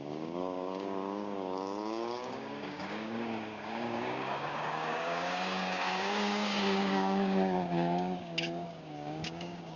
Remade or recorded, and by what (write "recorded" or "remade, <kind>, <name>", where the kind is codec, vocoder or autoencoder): remade, codec, DAC